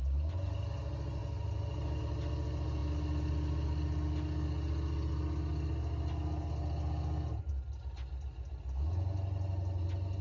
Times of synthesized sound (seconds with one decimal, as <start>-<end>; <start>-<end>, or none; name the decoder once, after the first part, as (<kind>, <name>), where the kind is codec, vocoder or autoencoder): none